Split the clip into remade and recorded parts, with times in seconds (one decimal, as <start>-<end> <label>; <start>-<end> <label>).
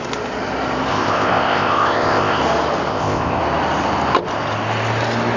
0.0-0.9 recorded; 0.9-2.4 remade; 2.4-2.9 recorded; 2.9-3.4 remade; 3.4-5.4 recorded